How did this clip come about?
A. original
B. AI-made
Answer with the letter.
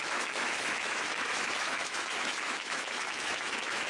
B